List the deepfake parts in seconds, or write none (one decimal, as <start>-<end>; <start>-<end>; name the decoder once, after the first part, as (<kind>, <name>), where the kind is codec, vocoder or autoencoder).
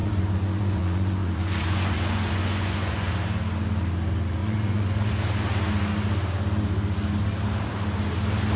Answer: 0.0-3.1 (vocoder, Vocos); 4.4-5.1